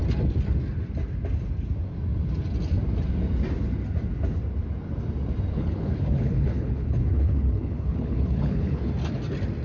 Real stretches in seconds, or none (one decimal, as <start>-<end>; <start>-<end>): 0.0-5.5; 8.9-9.6